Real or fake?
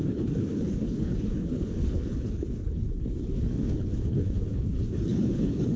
fake